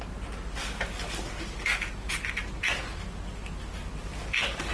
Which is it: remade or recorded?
recorded